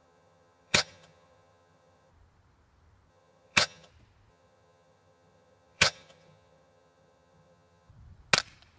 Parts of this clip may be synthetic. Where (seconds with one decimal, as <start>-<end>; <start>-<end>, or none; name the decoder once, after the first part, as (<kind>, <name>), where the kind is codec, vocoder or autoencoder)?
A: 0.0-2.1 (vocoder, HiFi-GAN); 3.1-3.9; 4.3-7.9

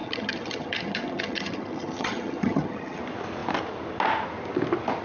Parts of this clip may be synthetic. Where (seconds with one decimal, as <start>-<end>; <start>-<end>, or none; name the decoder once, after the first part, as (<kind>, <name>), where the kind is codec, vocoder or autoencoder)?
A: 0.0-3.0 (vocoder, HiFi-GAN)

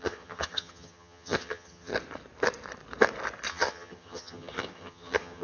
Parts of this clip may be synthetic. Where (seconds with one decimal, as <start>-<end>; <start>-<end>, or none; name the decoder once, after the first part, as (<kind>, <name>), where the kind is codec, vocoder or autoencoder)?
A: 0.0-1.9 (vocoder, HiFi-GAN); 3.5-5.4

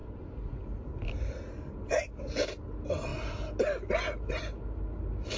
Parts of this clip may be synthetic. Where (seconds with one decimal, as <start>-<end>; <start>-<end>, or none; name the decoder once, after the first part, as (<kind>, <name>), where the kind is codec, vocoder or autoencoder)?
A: none

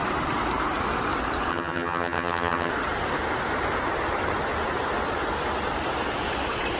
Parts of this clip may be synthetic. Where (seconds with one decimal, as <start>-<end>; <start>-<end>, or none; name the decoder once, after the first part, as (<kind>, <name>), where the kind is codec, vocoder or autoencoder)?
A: 1.5-2.7 (vocoder, HiFi-GAN)

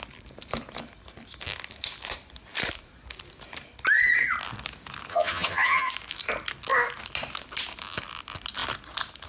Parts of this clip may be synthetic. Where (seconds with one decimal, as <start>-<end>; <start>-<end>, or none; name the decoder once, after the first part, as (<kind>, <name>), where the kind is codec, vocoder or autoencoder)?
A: 5.1-5.9 (vocoder, HiFi-GAN)

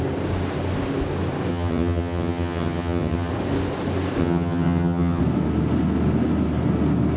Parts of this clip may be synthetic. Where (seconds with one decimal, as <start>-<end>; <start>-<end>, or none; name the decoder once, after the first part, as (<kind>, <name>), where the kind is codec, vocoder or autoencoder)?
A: 1.5-3.3 (vocoder, HiFi-GAN); 4.2-5.2